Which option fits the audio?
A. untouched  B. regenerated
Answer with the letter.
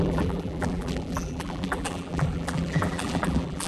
B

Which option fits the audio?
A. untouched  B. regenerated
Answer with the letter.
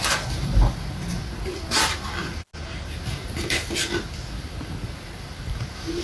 A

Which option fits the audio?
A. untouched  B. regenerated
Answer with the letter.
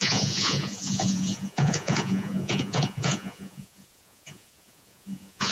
B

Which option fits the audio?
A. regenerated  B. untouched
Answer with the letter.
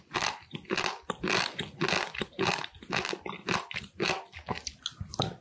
B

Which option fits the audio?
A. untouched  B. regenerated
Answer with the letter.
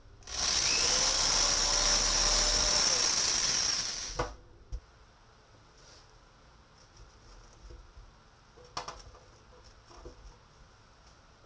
A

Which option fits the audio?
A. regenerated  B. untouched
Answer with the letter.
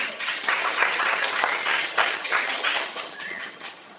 A